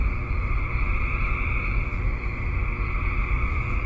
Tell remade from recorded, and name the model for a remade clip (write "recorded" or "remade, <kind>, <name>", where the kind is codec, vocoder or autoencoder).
recorded